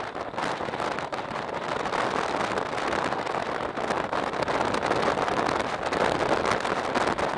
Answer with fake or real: real